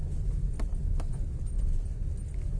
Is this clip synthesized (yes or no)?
no